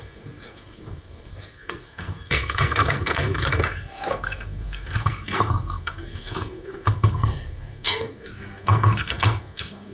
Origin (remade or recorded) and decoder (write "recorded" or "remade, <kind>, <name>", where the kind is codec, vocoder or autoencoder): remade, codec, SNAC